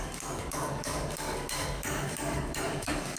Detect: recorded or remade remade